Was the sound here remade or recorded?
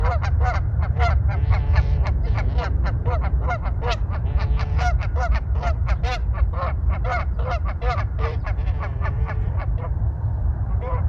remade